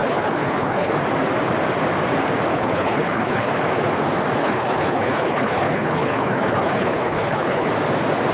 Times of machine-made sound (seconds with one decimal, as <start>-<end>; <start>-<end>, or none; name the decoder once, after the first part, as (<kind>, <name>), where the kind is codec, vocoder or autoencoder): 0.0-0.9 (codec, HILCodec); 2.5-3.5; 4.4-7.7